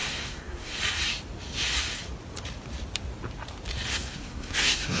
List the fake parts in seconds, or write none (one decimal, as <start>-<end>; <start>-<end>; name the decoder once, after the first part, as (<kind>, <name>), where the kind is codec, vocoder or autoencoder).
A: 0.0-0.8 (codec, SNAC); 3.9-5.0